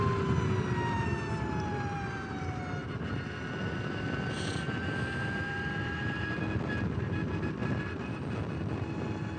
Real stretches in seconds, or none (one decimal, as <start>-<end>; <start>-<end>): 0.0-9.4